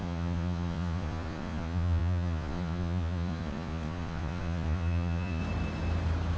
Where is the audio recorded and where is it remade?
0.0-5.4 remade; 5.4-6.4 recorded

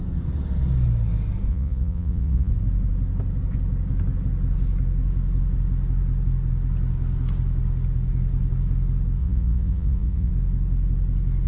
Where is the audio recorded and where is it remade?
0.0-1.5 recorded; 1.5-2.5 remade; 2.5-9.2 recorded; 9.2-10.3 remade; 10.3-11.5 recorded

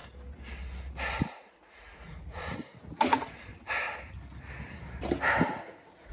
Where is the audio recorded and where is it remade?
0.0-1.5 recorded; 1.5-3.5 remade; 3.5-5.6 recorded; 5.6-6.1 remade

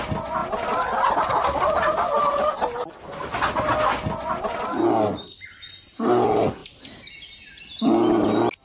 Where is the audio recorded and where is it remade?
0.0-8.6 recorded

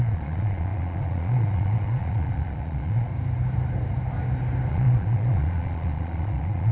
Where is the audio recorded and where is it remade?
0.0-3.1 remade; 3.1-4.7 recorded; 4.7-6.7 remade

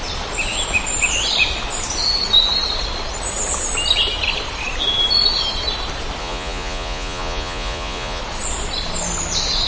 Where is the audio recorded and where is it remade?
0.0-6.2 recorded; 6.2-8.2 remade; 8.2-9.7 recorded

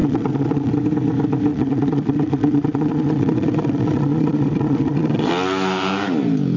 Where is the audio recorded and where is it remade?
0.0-0.7 remade; 0.7-1.5 recorded; 1.5-5.3 remade; 5.3-6.6 recorded

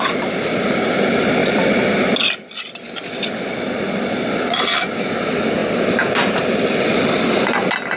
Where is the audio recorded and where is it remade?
0.0-8.0 recorded